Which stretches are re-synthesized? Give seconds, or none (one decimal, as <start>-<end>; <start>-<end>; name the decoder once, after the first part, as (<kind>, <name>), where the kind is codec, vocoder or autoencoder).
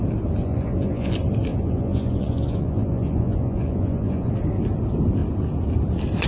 0.4-1.1 (vocoder, Vocos); 1.5-4.3